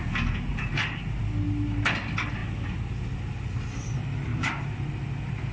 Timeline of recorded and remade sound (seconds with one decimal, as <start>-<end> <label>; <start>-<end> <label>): 0.0-0.5 recorded; 0.5-1.2 remade; 1.2-4.3 recorded; 4.3-4.9 remade; 4.9-5.5 recorded